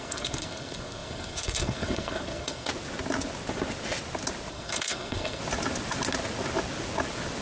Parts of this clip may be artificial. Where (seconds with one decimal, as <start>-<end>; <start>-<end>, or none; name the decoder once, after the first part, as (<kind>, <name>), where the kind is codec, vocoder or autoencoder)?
0.0-2.7 (codec, SNAC); 4.5-5.4

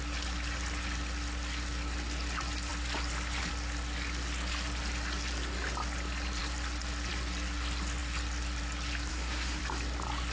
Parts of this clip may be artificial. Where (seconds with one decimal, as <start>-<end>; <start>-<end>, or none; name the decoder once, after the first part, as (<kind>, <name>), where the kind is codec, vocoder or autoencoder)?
9.1-9.6 (codec, SNAC)

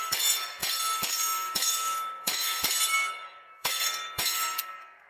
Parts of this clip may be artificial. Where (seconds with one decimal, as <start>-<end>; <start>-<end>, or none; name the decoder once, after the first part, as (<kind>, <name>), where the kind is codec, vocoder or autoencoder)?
0.0-5.1 (codec, SNAC)

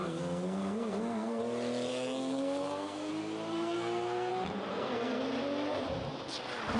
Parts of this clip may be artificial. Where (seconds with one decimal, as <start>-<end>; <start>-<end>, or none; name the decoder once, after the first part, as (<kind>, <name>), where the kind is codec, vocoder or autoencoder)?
0.0-1.4 (codec, SNAC); 1.9-3.1; 3.5-4.3; 4.7-5.2